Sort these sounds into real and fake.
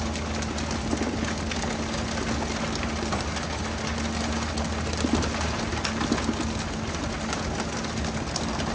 real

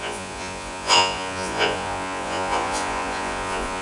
fake